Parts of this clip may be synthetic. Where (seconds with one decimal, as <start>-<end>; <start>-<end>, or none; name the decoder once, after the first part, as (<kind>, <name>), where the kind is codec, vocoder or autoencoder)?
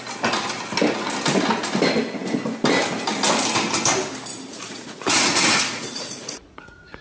4.5-7.0 (vocoder, Vocos)